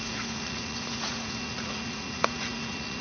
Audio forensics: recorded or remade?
remade